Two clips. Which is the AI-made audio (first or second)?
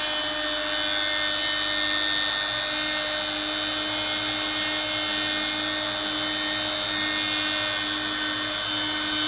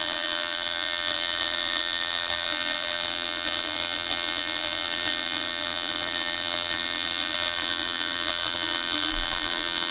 second